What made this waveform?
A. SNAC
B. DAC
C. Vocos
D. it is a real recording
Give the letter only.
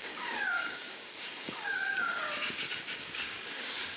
B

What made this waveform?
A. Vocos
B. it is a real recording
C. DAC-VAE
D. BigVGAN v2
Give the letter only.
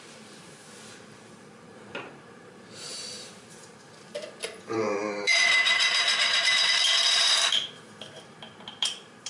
D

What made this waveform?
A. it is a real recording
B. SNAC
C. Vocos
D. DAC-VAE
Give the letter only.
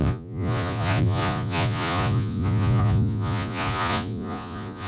C